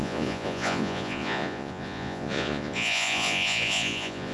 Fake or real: fake